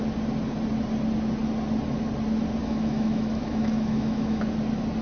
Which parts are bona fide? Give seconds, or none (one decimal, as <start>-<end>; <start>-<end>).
0.0-2.6; 4.4-5.0